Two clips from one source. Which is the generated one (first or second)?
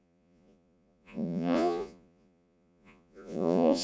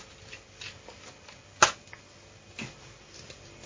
first